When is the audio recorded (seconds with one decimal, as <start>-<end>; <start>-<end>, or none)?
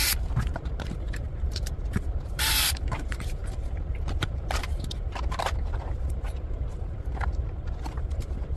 none